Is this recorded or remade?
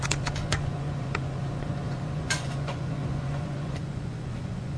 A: remade